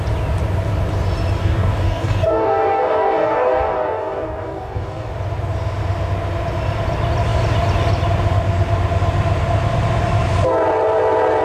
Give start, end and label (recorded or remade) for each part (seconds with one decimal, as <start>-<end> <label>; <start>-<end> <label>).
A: 0.0-1.4 recorded; 1.4-5.1 remade; 5.1-11.4 recorded